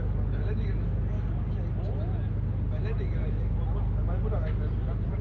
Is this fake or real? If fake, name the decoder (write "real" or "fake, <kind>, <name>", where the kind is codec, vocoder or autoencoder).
real